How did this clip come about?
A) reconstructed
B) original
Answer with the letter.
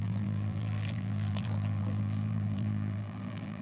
A